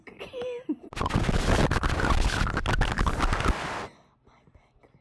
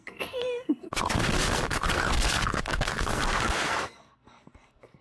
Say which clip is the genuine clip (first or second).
first